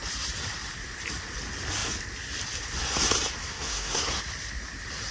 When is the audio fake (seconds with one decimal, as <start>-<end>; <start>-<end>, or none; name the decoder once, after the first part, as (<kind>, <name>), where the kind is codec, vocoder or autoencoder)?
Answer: 3.4-4.2 (codec, SNAC)